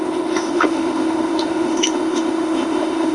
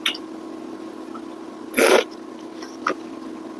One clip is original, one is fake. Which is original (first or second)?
second